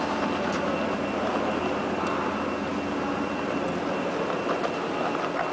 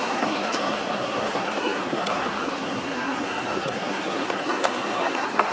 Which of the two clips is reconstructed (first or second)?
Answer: second